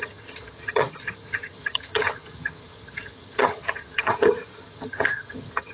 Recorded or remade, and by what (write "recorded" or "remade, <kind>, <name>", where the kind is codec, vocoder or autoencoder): remade, vocoder, HiFi-GAN